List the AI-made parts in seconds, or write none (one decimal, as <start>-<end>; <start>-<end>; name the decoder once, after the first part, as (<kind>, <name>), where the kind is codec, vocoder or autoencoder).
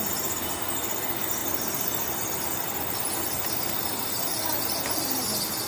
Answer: none